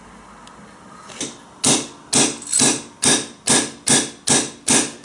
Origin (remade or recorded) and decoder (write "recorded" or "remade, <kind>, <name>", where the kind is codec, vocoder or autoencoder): recorded